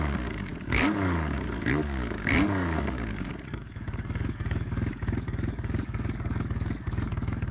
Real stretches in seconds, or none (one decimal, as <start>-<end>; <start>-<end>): none